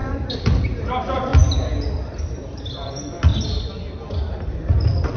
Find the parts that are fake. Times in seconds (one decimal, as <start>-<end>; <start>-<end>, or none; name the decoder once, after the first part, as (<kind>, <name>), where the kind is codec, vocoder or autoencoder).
0.0-1.3 (vocoder, BigVGAN v2); 1.9-3.3; 4.5-5.2